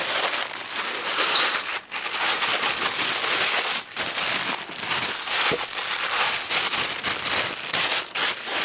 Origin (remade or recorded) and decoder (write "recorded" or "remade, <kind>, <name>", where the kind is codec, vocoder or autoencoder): recorded